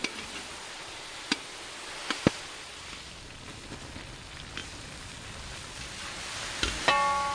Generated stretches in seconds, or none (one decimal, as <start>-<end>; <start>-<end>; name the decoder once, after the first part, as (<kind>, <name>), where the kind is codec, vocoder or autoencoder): none